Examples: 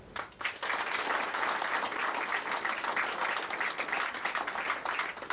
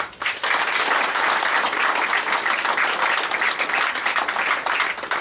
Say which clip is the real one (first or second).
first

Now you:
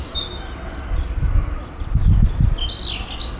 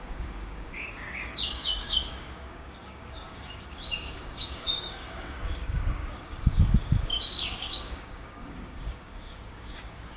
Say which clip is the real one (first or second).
first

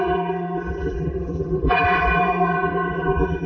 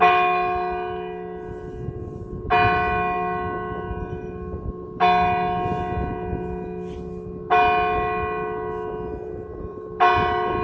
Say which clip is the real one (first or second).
second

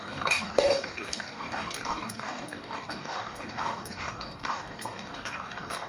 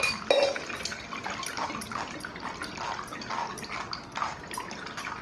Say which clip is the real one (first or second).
second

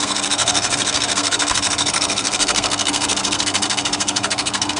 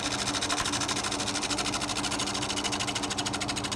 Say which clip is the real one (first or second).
second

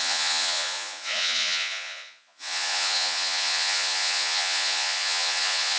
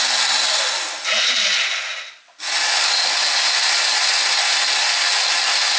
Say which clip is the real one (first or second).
second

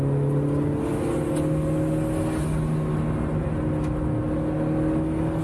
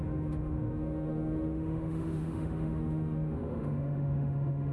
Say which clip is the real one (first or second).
first